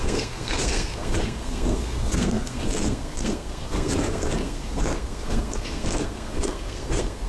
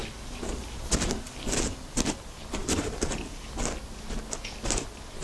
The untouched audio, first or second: second